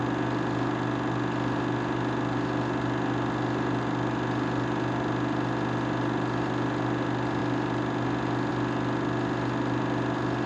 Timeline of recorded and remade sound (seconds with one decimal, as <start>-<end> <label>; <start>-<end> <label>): 0.0-10.5 recorded